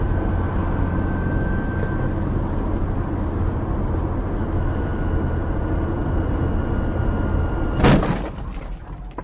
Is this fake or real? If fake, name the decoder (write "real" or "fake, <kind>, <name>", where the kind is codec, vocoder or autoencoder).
real